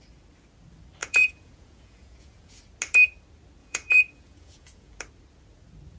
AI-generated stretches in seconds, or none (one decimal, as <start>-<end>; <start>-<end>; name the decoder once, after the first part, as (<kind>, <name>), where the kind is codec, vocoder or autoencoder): 1.0-2.6 (vocoder, Vocos); 3.6-4.9